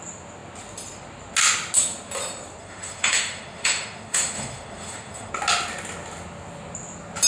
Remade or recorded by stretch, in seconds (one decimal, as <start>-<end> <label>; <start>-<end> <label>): 0.0-2.6 recorded; 2.6-5.3 remade; 5.3-7.3 recorded